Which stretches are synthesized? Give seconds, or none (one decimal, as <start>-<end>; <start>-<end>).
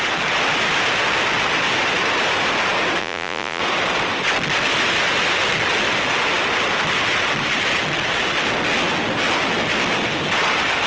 3.0-3.6